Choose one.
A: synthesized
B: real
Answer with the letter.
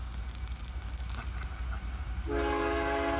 B